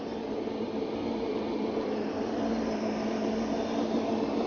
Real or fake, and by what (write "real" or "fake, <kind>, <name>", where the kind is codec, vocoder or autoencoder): real